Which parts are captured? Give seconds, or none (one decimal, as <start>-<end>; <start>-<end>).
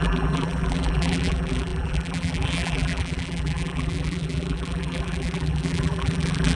none